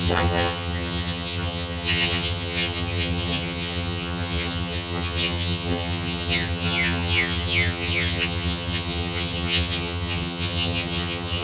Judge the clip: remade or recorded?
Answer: remade